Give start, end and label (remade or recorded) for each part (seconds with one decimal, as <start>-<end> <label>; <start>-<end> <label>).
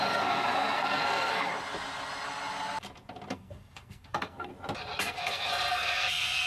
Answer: 0.0-1.5 remade; 1.5-3.3 recorded; 3.3-4.5 remade; 4.5-5.0 recorded; 5.0-6.5 remade